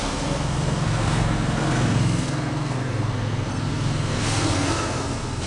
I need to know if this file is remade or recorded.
remade